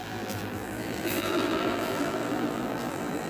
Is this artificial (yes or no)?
yes